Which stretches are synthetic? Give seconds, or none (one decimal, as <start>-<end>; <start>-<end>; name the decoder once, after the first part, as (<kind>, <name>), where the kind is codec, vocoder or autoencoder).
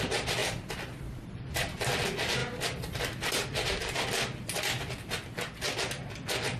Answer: none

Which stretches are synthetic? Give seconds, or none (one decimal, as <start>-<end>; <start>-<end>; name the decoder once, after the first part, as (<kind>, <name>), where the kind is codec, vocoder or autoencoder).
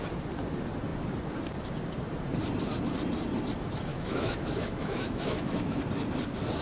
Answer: 3.9-5.8 (autoencoder, DAC-VAE)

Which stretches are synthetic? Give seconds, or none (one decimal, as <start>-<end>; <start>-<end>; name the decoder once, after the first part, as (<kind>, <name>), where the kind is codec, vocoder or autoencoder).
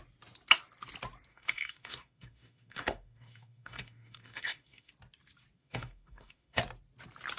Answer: 1.3-4.9 (autoencoder, DAC-VAE); 5.6-6.6